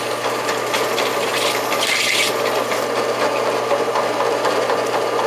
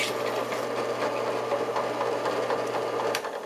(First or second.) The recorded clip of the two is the second